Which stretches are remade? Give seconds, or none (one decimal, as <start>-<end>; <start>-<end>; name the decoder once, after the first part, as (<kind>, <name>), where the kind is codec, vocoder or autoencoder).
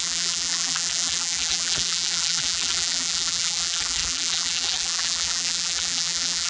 0.0-6.5 (vocoder, BigVGAN v2)